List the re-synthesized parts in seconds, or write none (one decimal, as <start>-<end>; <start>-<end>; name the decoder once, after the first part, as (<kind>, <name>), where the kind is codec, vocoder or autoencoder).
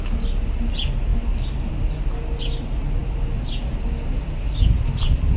none